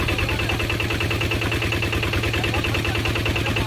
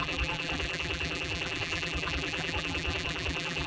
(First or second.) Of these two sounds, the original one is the first